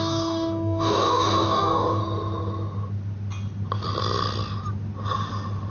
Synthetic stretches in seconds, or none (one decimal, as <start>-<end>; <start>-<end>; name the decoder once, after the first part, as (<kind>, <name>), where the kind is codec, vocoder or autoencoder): 0.0-2.0 (codec, DAC)